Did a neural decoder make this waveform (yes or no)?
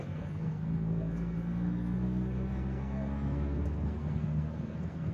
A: yes